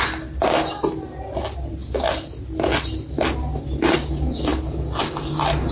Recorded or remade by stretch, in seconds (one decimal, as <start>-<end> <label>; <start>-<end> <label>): 0.0-5.7 recorded